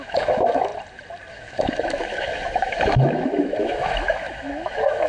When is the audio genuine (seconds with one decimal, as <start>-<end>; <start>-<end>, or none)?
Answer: 0.7-1.3